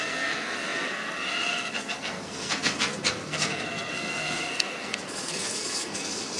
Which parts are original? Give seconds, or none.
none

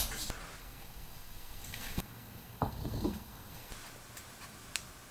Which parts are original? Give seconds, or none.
0.0-0.6; 3.7-5.1

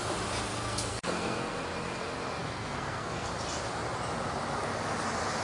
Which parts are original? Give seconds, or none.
0.0-0.5; 1.6-2.4; 3.3-5.4

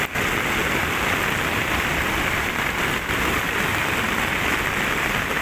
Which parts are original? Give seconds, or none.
0.0-5.4

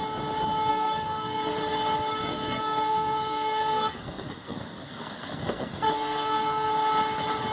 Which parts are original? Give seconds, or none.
0.0-0.7; 1.5-2.2; 6.7-7.5

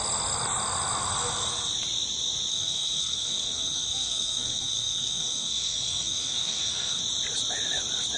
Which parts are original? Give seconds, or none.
0.0-2.5; 7.0-8.2